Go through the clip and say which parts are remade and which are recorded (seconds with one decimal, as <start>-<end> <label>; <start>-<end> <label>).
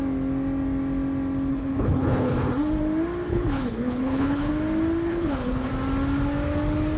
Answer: 0.0-1.5 recorded; 1.5-2.5 remade; 2.5-3.3 recorded; 3.3-4.5 remade; 4.5-5.1 recorded; 5.1-5.7 remade; 5.7-7.0 recorded